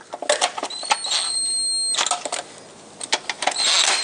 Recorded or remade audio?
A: recorded